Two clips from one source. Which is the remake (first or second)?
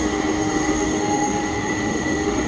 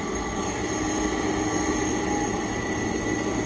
first